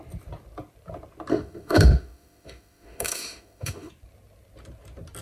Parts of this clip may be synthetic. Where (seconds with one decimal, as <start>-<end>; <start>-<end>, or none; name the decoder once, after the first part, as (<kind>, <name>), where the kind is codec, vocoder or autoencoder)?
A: 1.3-3.9 (autoencoder, DAC-VAE)